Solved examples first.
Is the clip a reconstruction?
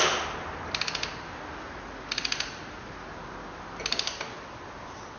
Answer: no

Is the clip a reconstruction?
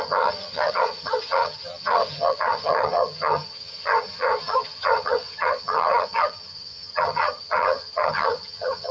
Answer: yes